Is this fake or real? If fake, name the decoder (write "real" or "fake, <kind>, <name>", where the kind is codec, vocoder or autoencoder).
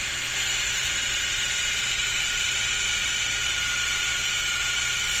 fake, vocoder, BigVGAN v2